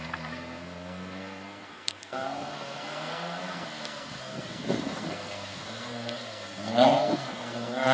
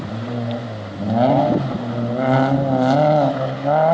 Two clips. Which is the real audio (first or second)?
second